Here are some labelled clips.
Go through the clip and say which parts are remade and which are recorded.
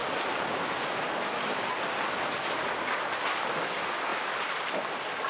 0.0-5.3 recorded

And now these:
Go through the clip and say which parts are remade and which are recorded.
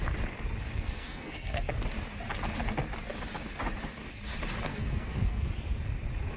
0.0-0.7 recorded; 0.7-1.7 remade; 1.7-4.7 recorded; 4.7-5.5 remade; 5.5-6.4 recorded